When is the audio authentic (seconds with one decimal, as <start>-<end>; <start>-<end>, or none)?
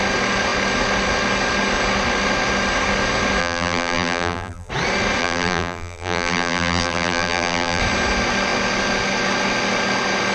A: 0.0-3.4; 4.7-5.2; 7.8-10.3